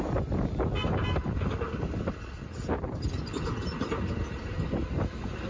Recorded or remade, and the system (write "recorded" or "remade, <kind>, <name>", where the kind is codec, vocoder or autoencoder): recorded